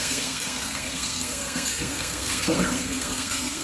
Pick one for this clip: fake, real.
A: fake